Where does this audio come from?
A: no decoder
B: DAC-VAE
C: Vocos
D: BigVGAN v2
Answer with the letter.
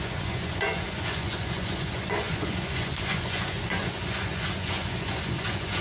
C